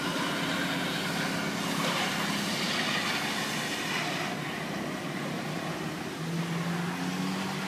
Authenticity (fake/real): real